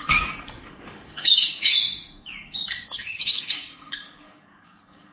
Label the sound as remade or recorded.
remade